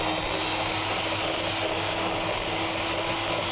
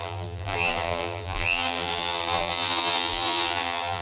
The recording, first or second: first